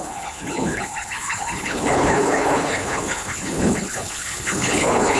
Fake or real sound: fake